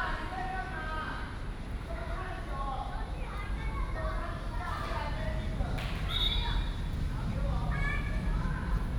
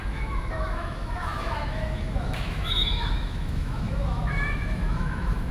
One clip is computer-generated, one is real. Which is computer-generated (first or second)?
second